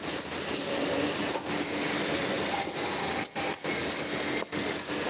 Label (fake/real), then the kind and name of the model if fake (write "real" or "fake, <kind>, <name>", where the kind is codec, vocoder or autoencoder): real